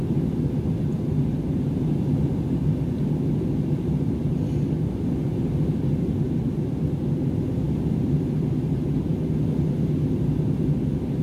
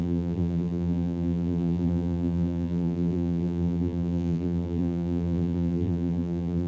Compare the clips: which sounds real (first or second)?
first